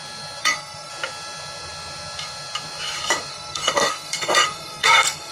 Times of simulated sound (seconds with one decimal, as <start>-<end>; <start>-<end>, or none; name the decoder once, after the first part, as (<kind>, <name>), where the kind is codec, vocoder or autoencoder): 0.4-0.9 (codec, SNAC); 3.3-5.3